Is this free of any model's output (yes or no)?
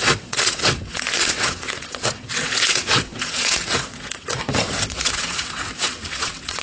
no